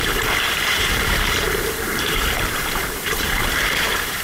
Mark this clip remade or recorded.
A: remade